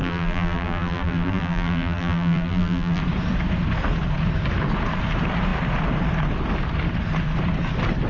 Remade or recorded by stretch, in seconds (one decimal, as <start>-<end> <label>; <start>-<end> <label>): 0.0-3.0 remade; 3.0-8.1 recorded